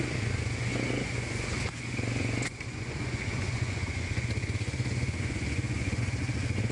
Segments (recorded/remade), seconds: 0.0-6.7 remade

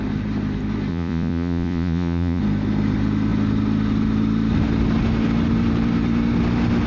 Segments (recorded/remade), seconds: 0.0-0.9 recorded; 0.9-2.4 remade; 2.4-6.9 recorded

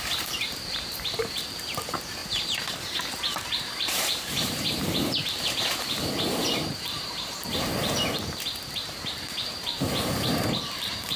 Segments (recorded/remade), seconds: 0.0-7.5 remade; 7.5-8.7 recorded; 8.7-11.2 remade

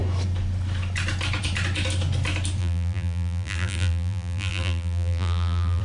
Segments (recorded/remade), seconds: 0.0-2.6 recorded; 2.6-5.8 remade